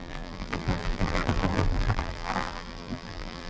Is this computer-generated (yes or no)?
yes